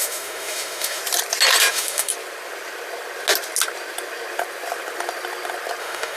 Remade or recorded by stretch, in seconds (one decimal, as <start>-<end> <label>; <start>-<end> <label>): 0.0-1.0 remade; 1.0-1.7 recorded; 1.7-2.1 remade; 2.1-5.8 recorded; 5.8-6.2 remade